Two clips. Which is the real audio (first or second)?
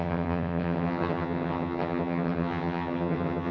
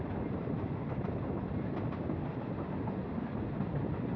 second